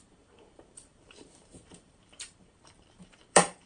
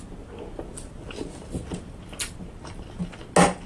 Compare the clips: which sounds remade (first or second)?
first